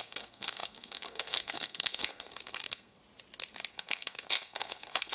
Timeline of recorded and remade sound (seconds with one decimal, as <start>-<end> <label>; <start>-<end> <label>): 0.0-3.0 remade; 3.0-3.7 recorded; 3.7-5.1 remade